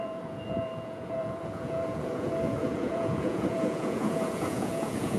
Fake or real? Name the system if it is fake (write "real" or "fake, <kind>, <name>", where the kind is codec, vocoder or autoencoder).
fake, vocoder, Vocos